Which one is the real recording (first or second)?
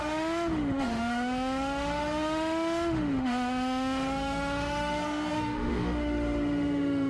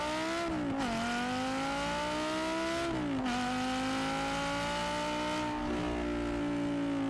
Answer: second